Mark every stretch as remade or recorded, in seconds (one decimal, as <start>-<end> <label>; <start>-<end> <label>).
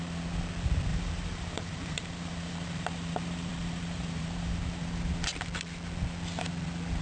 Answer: 0.0-0.9 recorded; 0.9-5.1 remade; 5.1-7.0 recorded